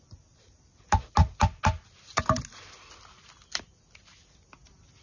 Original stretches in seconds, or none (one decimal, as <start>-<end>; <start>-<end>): 0.0-5.0